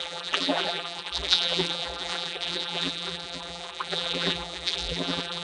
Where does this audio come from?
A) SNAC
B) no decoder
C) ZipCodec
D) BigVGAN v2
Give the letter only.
D